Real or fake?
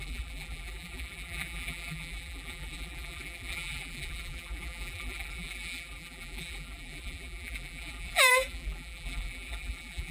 fake